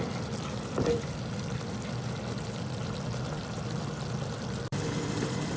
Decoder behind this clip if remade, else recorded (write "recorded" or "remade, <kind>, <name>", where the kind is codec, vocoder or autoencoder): remade, vocoder, BigVGAN v2